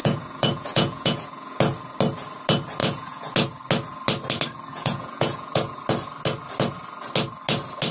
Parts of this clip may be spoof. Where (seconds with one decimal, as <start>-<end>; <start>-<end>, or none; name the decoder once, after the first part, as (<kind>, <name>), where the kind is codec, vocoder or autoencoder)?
0.0-1.6 (vocoder, Vocos); 2.8-3.3; 4.7-5.8